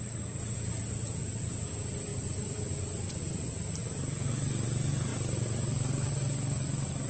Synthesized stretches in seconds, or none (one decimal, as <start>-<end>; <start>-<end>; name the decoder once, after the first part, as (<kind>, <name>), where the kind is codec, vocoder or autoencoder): none